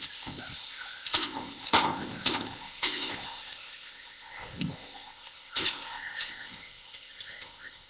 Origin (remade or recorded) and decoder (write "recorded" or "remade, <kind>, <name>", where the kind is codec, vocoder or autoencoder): remade, codec, ZipCodec